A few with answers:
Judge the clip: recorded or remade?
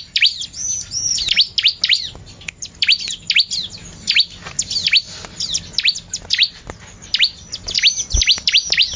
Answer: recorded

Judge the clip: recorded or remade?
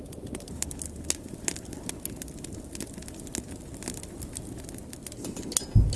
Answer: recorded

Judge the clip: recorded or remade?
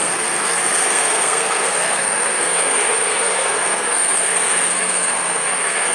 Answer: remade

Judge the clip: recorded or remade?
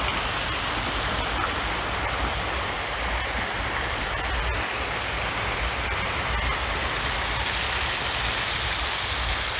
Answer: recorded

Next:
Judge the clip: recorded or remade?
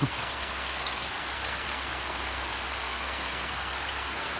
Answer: remade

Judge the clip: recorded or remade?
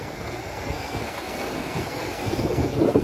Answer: remade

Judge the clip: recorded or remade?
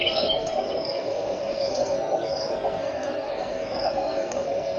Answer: remade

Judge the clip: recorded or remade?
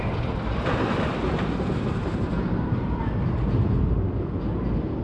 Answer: recorded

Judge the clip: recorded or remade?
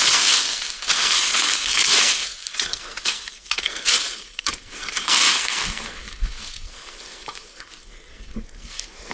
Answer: remade